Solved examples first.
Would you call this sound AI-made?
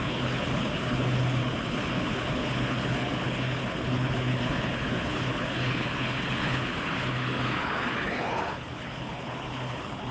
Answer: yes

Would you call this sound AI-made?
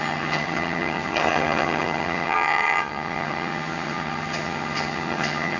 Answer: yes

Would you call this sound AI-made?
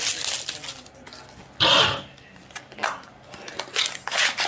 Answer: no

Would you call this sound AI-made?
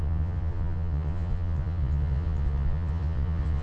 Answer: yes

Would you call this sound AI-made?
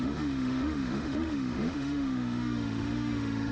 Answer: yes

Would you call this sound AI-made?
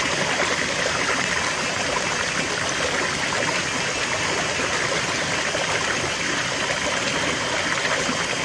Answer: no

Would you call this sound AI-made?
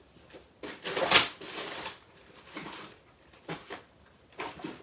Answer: no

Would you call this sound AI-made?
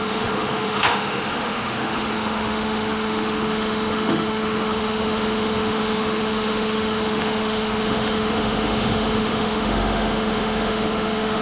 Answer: yes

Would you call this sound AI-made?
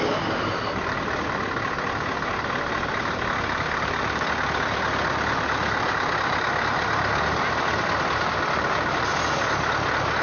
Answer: no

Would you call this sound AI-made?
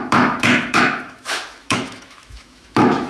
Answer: yes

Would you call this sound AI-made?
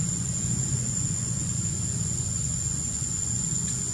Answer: yes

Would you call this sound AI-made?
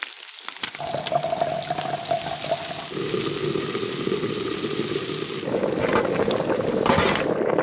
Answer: no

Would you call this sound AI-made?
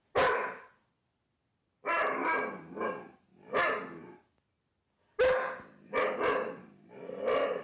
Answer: no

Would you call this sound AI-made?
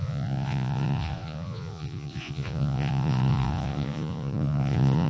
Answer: yes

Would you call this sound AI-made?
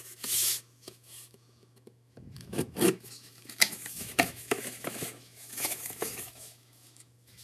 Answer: yes